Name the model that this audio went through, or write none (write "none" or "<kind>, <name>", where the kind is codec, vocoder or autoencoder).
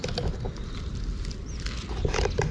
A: none